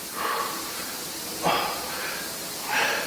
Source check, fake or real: real